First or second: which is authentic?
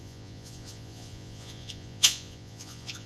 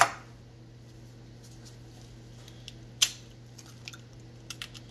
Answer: second